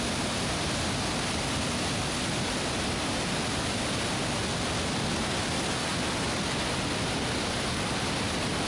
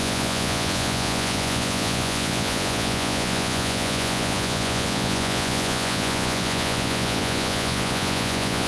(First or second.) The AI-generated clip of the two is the second